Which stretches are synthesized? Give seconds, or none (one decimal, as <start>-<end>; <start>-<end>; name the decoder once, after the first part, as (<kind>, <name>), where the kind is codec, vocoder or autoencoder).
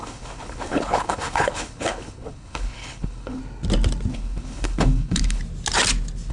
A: 0.0-3.4 (codec, HILCodec); 4.1-5.4